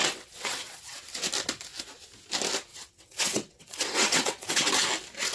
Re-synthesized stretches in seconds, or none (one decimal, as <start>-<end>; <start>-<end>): 0.0-1.0; 2.7-4.7